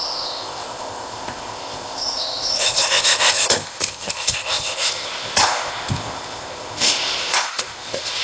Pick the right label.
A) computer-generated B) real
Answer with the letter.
A